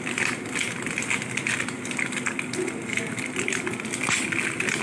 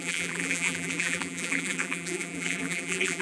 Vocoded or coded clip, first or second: second